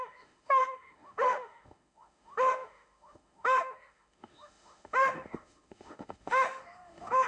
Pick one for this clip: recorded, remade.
remade